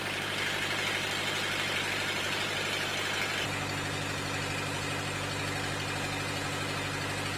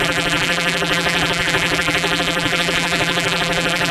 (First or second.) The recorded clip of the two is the first